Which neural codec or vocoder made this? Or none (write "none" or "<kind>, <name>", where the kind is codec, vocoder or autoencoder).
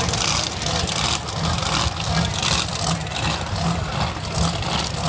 none